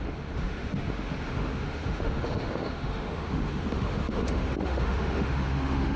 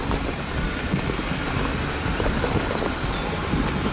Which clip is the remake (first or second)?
first